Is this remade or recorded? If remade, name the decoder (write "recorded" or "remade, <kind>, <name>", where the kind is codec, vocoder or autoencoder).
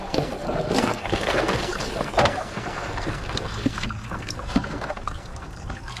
remade, codec, SNAC